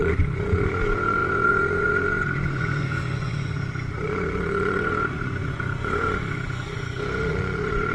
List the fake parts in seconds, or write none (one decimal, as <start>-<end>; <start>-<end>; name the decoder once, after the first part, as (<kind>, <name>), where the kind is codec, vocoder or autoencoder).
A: 0.0-7.9 (vocoder, Vocos)